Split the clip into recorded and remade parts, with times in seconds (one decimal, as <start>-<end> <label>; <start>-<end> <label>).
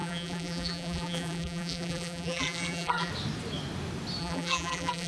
0.0-3.1 remade; 3.1-4.2 recorded; 4.2-5.1 remade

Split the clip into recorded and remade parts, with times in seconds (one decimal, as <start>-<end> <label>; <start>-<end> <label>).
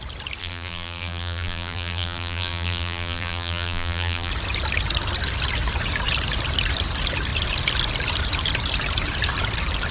0.0-0.4 recorded; 0.4-4.3 remade; 4.3-9.9 recorded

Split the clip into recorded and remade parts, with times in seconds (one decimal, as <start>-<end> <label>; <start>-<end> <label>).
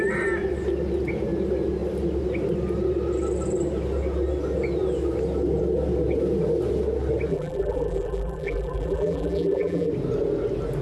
0.0-7.3 recorded; 7.3-9.9 remade; 9.9-10.8 recorded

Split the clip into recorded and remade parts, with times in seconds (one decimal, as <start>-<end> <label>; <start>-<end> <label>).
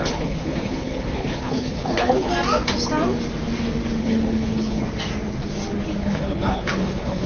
0.0-2.3 remade; 2.3-4.0 recorded; 4.0-4.8 remade; 4.8-6.0 recorded; 6.0-7.3 remade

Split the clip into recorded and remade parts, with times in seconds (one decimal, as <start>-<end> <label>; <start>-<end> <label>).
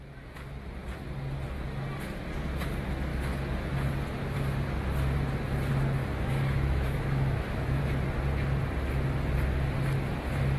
0.0-6.0 recorded; 6.0-7.8 remade; 7.8-10.6 recorded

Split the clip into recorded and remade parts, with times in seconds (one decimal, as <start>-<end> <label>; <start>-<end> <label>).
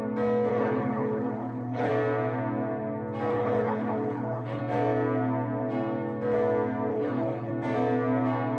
0.0-0.5 recorded; 0.5-1.9 remade; 1.9-3.3 recorded; 3.3-4.6 remade; 4.6-6.9 recorded; 6.9-7.5 remade; 7.5-8.6 recorded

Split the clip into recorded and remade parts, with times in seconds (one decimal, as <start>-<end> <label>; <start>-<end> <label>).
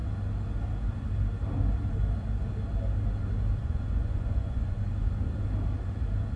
0.0-3.6 recorded; 3.6-4.9 remade; 4.9-6.4 recorded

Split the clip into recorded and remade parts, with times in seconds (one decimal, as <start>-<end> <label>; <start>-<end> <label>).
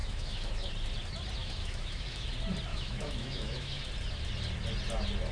0.0-0.7 remade; 0.7-1.4 recorded; 1.4-2.3 remade; 2.3-2.7 recorded; 2.7-3.9 remade; 3.9-5.3 recorded